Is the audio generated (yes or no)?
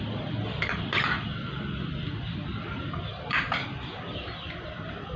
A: yes